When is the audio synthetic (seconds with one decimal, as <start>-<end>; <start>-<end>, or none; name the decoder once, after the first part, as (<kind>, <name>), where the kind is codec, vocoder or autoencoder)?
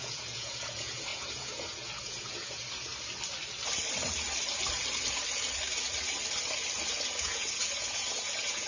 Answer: 0.0-2.9 (vocoder, Vocos); 7.2-8.7